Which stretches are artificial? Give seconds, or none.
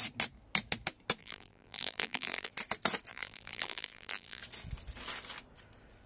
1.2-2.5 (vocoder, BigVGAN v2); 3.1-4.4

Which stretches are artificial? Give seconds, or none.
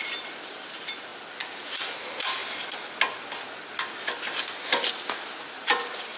0.0-1.1 (vocoder, BigVGAN v2); 2.0-2.4; 5.4-6.2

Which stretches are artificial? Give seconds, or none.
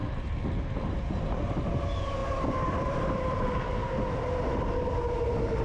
2.2-4.9 (vocoder, BigVGAN v2)